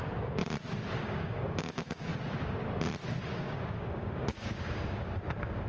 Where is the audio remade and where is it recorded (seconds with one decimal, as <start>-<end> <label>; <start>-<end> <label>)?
0.0-0.4 remade; 0.4-1.0 recorded; 1.0-2.1 remade; 2.1-3.2 recorded; 3.2-5.7 remade